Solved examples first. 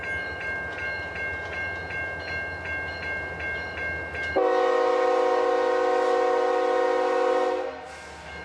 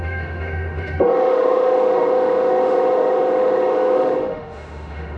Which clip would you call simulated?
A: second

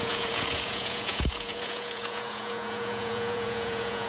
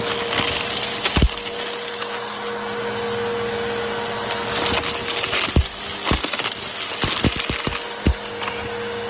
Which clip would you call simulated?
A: first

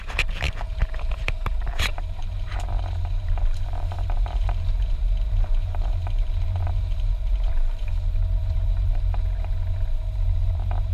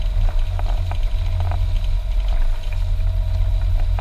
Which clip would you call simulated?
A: first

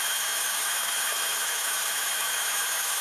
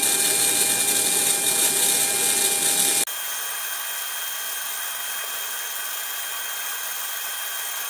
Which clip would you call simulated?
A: first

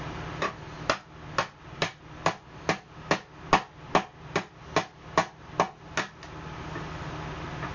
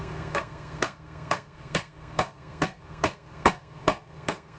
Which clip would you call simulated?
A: second